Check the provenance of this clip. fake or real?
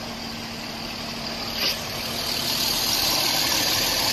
real